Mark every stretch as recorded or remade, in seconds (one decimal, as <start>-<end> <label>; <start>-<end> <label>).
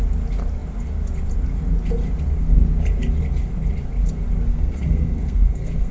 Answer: 0.0-4.5 recorded; 4.5-5.9 remade